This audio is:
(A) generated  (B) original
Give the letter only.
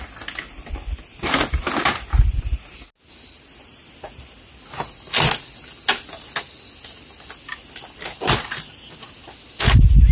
B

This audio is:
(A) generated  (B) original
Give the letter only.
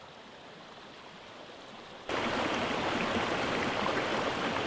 B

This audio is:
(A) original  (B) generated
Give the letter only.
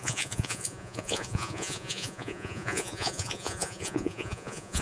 B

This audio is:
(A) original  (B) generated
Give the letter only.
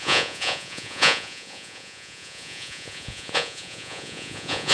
B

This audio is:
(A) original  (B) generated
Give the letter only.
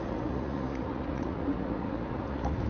B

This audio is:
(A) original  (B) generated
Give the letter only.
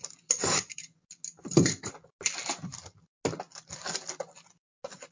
A